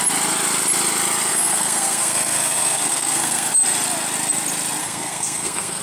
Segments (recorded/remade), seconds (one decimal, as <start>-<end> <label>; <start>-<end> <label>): 0.0-1.3 recorded; 1.3-3.5 remade; 3.5-4.8 recorded; 4.8-5.8 remade